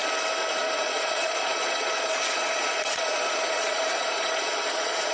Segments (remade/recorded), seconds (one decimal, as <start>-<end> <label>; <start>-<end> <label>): 0.0-0.6 recorded; 0.6-5.1 remade